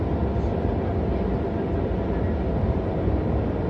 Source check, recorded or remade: recorded